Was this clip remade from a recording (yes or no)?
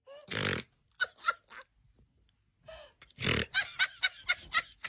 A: no